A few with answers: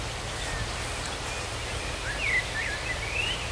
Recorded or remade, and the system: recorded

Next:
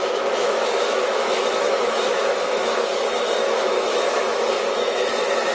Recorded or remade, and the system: remade, autoencoder, DAC-VAE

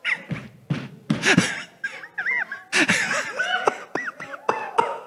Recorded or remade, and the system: recorded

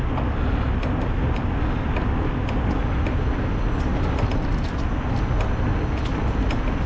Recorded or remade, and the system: recorded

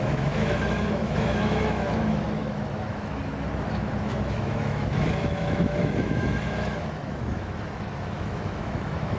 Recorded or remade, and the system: remade, autoencoder, DAC-VAE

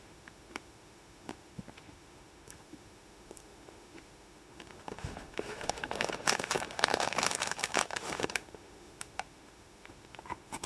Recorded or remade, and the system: remade, autoencoder, DAC-VAE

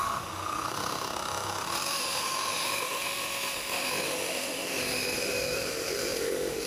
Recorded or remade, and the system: remade, autoencoder, DAC-VAE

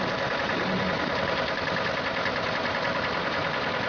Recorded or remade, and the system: recorded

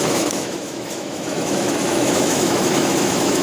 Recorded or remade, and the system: remade, autoencoder, DAC-VAE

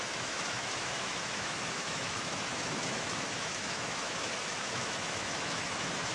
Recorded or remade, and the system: remade, autoencoder, DAC-VAE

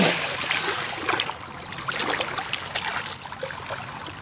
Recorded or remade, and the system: recorded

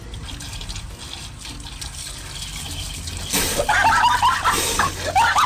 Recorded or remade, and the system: recorded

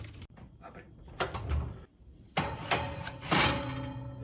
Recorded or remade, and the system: recorded